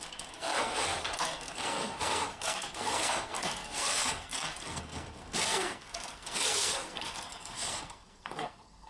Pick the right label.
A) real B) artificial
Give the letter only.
B